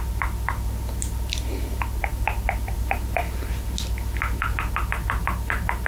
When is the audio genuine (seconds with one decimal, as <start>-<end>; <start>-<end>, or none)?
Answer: 0.0-5.9